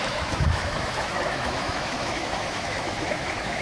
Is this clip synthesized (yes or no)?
yes